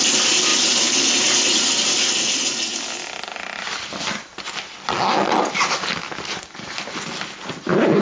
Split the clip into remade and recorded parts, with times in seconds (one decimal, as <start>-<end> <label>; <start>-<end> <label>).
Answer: 0.0-8.0 recorded